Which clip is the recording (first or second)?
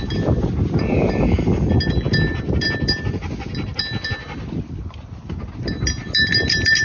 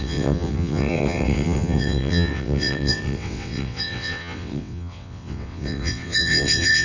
first